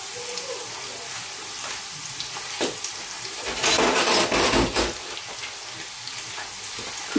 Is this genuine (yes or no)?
yes